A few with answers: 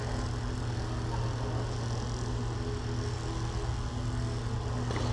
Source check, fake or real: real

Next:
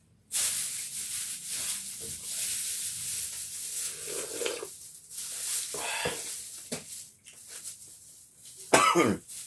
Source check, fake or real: real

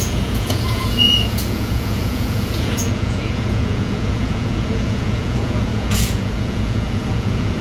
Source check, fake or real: fake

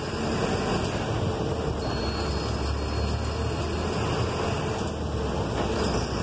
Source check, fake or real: real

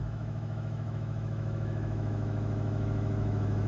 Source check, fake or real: fake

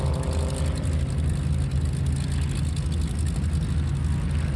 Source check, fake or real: real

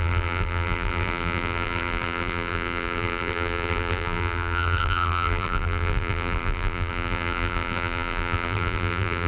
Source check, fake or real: fake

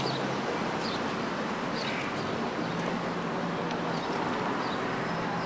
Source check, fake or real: real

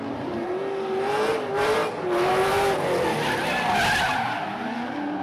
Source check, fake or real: real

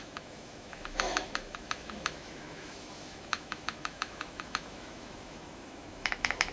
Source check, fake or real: fake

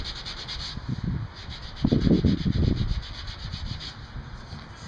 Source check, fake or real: real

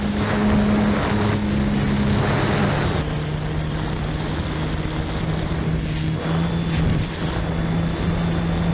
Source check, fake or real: real